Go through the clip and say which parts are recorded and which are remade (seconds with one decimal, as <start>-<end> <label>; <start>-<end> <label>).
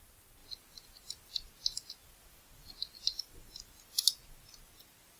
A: 0.0-5.2 recorded